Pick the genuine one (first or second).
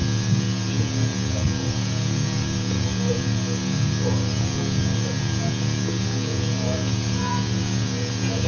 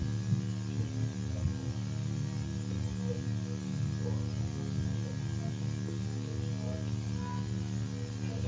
second